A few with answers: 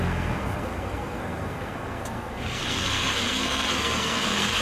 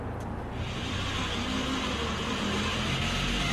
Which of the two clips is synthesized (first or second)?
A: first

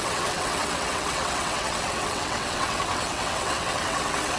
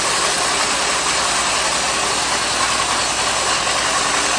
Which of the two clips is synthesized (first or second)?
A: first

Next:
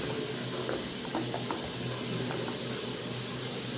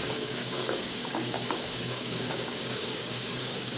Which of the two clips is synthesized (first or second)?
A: second